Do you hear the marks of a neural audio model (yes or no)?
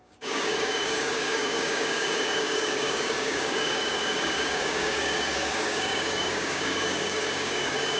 yes